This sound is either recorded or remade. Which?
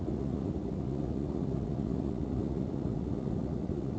remade